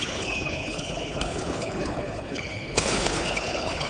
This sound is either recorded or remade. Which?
remade